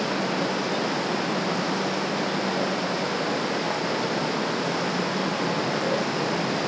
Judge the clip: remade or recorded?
recorded